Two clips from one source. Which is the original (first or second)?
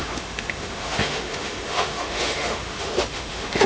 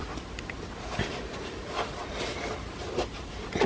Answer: second